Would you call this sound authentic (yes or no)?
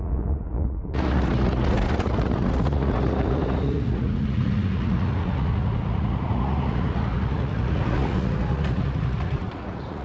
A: no